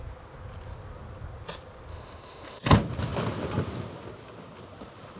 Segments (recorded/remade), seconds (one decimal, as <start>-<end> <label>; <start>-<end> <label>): 0.0-1.9 recorded; 1.9-2.6 remade; 2.6-5.2 recorded